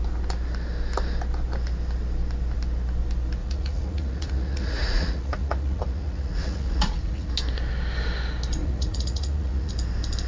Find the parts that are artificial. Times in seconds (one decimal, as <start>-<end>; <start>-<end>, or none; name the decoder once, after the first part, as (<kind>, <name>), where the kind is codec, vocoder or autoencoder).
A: 3.4-7.3 (vocoder, Vocos); 8.6-9.7